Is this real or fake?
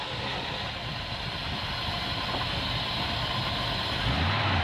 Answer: real